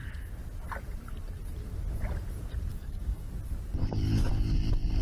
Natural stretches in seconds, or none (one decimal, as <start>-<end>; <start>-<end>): 0.0-2.7; 3.3-3.8; 4.3-5.0

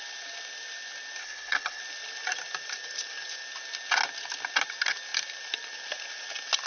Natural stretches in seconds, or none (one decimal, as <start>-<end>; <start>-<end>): 0.0-1.2; 1.8-6.7

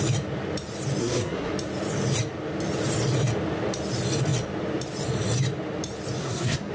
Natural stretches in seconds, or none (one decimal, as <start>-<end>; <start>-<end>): 0.0-1.0; 1.5-6.2

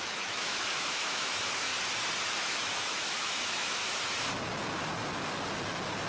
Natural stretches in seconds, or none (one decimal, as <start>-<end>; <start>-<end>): 1.7-2.3; 3.8-6.1

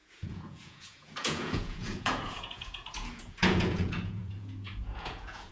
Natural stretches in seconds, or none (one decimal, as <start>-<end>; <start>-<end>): none

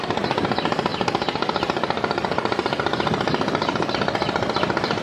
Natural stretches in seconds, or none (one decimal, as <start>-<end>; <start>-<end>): 0.0-0.9; 3.9-5.0

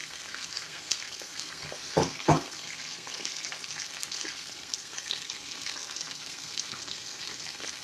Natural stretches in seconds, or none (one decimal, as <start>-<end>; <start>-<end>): none

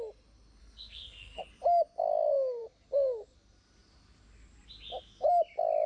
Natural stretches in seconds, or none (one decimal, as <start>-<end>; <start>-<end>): 0.0-0.6; 1.4-5.9